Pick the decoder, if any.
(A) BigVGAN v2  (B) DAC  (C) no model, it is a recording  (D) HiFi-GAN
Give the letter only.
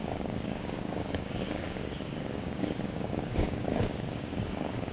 B